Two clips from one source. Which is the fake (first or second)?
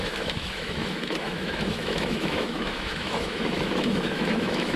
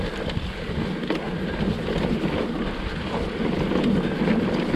first